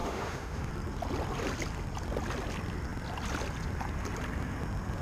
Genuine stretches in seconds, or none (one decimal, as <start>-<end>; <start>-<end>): 0.7-5.0